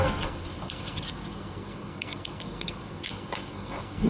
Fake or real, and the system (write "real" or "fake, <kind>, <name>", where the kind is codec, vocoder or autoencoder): fake, codec, SNAC